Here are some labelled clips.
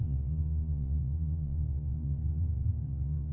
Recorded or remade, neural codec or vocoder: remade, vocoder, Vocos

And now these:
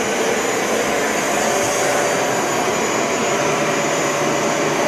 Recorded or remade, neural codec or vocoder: recorded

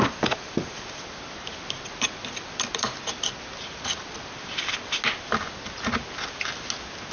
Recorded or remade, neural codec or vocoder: recorded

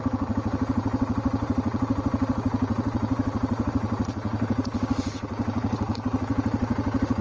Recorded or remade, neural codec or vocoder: remade, vocoder, Vocos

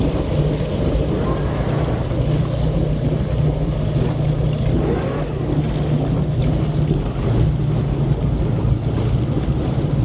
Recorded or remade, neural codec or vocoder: recorded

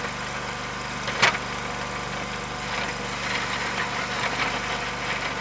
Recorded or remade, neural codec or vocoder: recorded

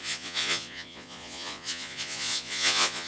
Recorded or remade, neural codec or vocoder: remade, vocoder, Vocos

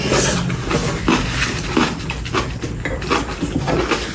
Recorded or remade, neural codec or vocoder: recorded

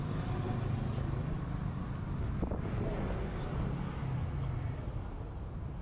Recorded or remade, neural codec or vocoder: recorded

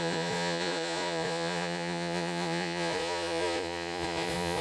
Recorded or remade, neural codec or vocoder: remade, vocoder, Vocos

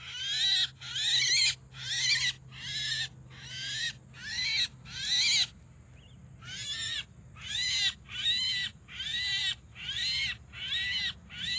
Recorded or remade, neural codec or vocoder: recorded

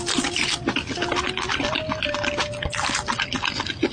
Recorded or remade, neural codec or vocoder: recorded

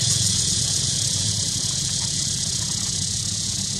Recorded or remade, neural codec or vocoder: remade, vocoder, Vocos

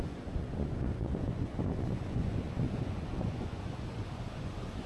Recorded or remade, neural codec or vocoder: remade, vocoder, Vocos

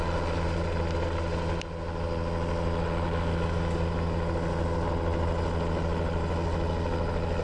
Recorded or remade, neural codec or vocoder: recorded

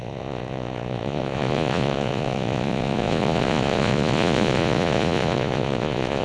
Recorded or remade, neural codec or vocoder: remade, vocoder, Vocos